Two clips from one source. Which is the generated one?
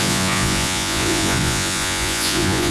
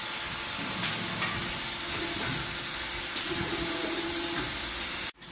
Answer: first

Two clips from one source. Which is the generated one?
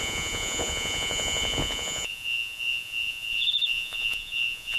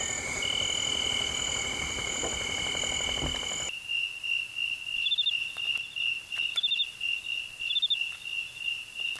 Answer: first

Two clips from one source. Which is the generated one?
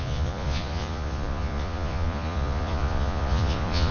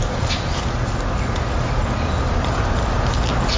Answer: first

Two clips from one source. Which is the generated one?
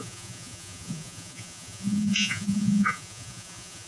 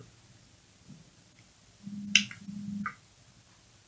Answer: first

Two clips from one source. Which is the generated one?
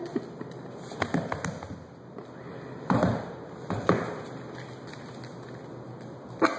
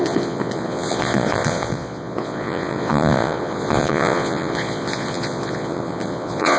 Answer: second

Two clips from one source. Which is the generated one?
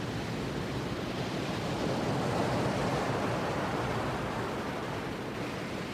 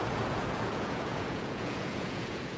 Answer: second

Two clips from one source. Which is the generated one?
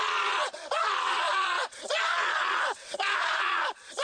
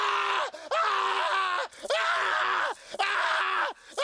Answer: first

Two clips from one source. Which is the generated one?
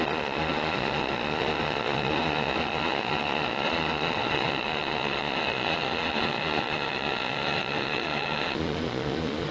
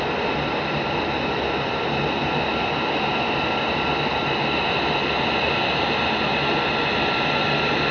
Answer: first